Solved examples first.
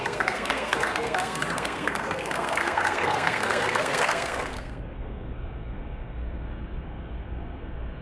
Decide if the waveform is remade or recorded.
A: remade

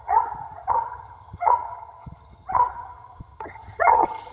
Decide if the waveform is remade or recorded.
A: remade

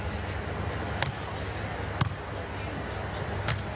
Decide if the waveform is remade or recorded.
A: recorded